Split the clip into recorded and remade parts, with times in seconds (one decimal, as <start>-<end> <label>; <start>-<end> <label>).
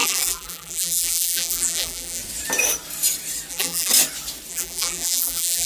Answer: 0.0-2.2 remade; 2.2-3.5 recorded; 3.5-3.9 remade; 3.9-4.5 recorded; 4.5-5.7 remade